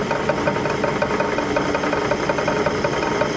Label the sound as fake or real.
real